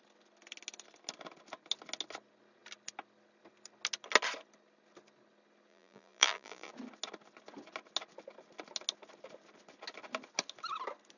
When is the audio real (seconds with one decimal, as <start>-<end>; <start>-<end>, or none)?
0.0-5.7; 6.7-11.2

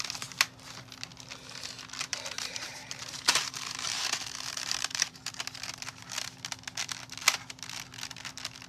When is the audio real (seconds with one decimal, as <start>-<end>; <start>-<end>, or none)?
0.0-2.1; 5.2-8.7

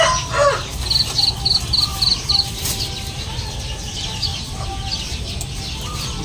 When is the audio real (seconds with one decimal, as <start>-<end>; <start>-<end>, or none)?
0.0-1.9; 3.4-4.3

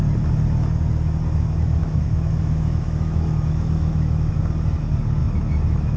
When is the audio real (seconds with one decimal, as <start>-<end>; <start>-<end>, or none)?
0.0-1.8; 4.4-5.2

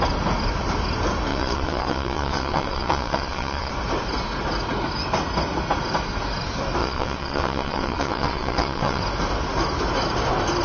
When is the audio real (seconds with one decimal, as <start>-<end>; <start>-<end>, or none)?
0.0-1.3; 3.7-6.8; 9.0-10.6

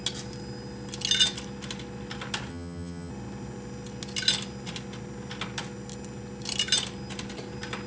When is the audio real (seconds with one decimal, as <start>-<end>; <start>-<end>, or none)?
0.0-2.5; 3.1-7.9